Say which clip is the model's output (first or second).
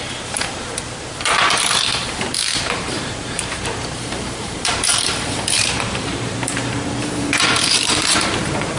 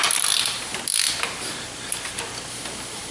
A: first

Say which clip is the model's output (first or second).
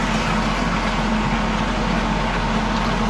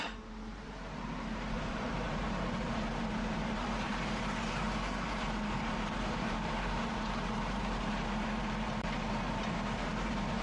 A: second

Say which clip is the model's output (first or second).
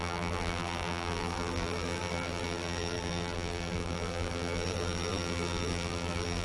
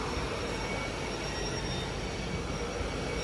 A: first